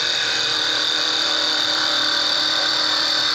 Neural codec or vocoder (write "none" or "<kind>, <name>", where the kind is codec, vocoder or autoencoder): vocoder, BigVGAN v2